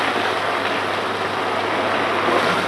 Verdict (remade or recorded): recorded